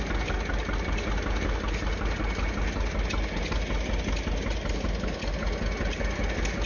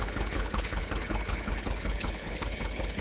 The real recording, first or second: first